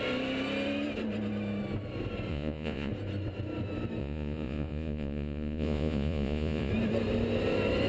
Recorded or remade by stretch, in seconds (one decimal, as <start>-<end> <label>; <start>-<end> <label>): 0.0-2.3 recorded; 2.3-2.9 remade; 2.9-4.0 recorded; 4.0-6.7 remade; 6.7-7.9 recorded